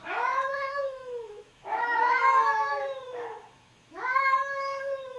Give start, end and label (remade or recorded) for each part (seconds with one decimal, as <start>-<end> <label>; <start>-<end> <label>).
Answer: 0.0-5.2 remade